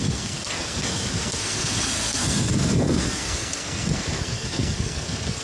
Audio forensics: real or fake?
fake